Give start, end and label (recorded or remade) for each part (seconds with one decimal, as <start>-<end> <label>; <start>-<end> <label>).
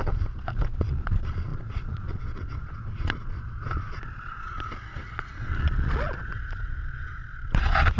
0.0-8.0 remade